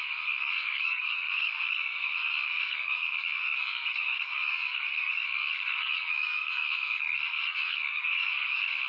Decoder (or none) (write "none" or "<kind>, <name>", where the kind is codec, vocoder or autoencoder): codec, SNAC